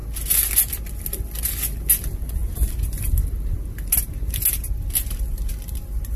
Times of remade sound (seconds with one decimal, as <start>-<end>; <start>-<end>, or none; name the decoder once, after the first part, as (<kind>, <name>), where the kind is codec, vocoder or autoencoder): none